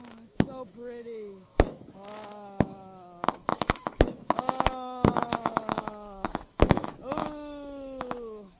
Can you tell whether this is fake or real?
fake